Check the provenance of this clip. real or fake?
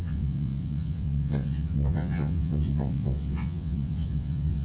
fake